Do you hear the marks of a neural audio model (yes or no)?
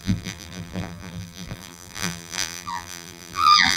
yes